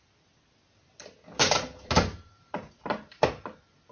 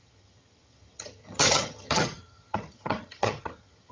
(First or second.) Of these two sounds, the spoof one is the second